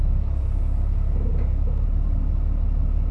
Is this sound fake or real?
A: real